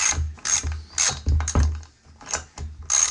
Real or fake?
real